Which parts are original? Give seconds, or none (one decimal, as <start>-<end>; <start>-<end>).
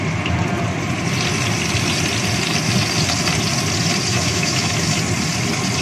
0.0-4.1; 4.9-5.8